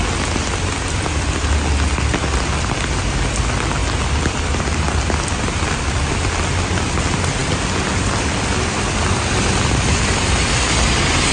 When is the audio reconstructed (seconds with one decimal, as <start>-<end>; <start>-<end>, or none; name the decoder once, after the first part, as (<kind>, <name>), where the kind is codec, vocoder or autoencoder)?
none